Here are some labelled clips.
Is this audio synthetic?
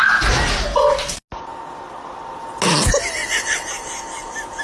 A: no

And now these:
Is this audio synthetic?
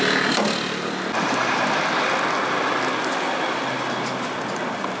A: no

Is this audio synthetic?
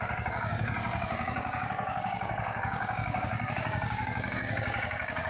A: yes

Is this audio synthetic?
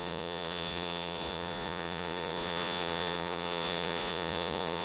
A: yes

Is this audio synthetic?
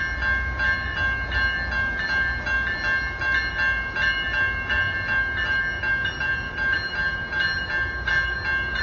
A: no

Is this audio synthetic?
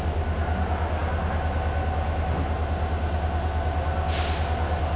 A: no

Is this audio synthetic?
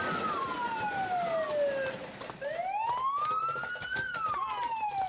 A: no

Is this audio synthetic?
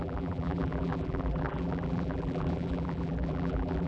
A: yes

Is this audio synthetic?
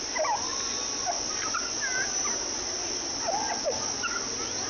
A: no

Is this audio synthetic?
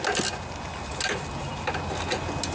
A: no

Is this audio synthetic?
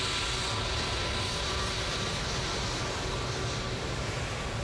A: no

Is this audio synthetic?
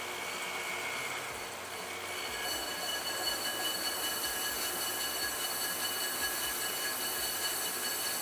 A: no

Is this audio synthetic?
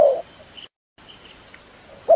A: no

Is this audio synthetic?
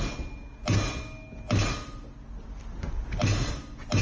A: no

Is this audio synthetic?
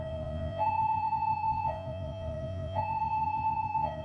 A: yes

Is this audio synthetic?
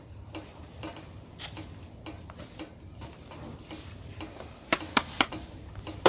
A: yes